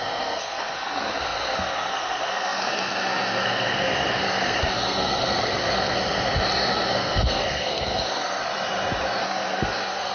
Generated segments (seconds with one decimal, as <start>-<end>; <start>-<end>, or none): 0.0-6.0; 6.7-8.4; 9.2-10.1